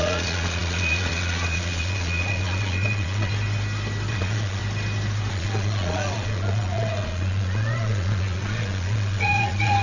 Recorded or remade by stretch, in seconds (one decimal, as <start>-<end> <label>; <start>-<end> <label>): 0.0-3.3 remade; 3.3-4.1 recorded; 4.1-4.6 remade; 4.6-5.3 recorded; 5.3-9.8 remade